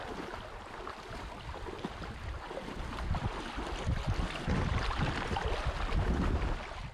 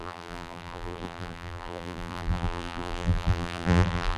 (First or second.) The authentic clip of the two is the first